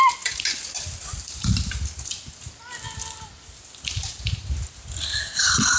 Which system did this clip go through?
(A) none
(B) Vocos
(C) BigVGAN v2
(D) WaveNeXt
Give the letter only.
A